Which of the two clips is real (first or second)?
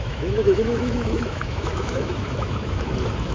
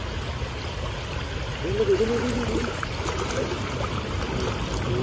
second